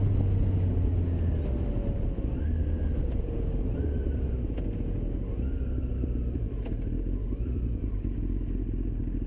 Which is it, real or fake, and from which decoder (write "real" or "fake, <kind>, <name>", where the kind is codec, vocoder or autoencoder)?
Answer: real